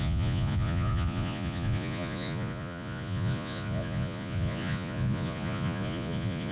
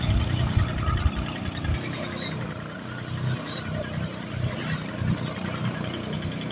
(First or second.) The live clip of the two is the second